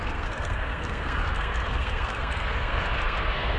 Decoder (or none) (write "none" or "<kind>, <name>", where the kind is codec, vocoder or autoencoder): codec, SNAC